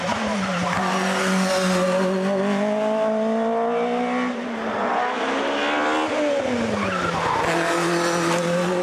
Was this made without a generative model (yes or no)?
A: yes